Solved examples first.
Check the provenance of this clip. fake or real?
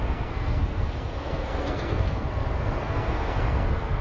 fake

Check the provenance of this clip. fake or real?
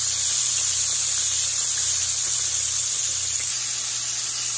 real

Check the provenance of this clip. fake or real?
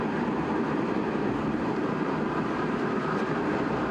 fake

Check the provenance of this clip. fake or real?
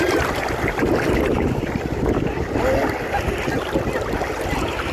real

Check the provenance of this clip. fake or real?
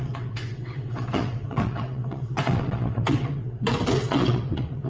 fake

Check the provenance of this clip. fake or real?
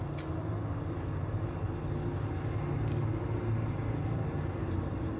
real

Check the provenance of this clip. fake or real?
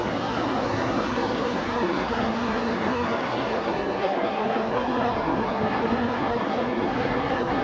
fake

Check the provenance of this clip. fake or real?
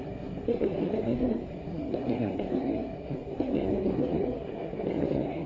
fake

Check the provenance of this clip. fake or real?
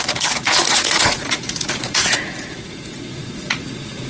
fake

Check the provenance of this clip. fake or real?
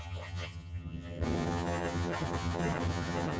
fake